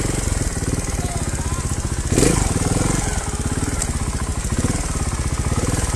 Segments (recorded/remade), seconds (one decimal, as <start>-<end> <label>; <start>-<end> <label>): 0.0-6.0 recorded